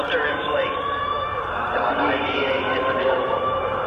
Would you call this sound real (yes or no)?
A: no